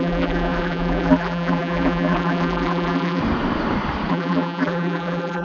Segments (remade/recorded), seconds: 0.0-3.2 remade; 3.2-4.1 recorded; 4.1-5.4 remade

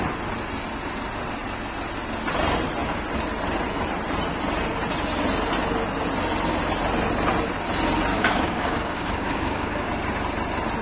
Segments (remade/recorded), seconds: 0.0-8.1 recorded; 8.1-9.9 remade; 9.9-10.8 recorded

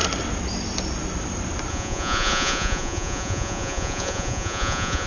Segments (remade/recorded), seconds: 0.0-1.7 recorded; 1.7-5.1 remade

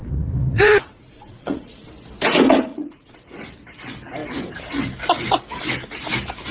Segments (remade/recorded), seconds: 0.0-1.9 remade; 1.9-2.7 recorded; 2.7-3.3 remade; 3.3-6.5 recorded

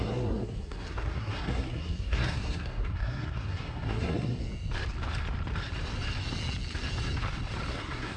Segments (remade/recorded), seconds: 0.0-4.4 remade; 4.4-7.7 recorded; 7.7-8.2 remade

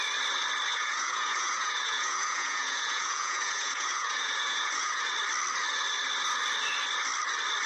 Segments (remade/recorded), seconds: 0.0-0.7 recorded; 0.7-5.0 remade; 5.0-7.7 recorded